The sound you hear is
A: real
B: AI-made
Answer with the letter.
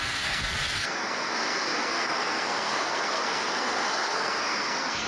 B